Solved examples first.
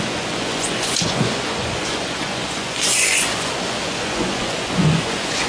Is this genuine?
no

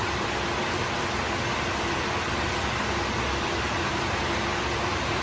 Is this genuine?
yes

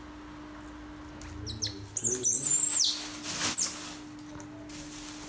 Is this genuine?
yes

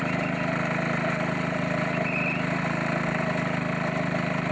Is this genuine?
yes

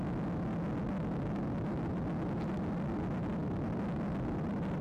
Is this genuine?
yes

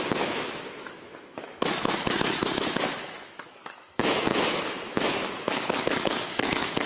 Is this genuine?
no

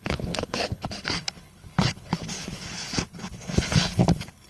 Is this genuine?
no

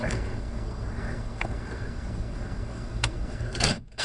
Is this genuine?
no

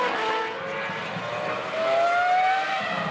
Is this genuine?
yes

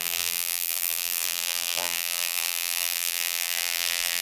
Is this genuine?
no